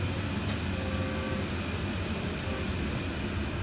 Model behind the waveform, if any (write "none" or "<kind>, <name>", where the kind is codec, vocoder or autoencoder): none